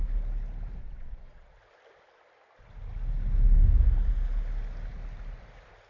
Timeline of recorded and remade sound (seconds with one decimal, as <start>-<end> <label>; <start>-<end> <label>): 0.0-0.8 recorded; 0.8-1.6 remade; 1.6-5.9 recorded